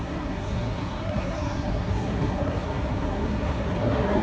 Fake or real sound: fake